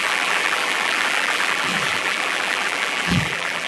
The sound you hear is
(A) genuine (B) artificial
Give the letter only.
B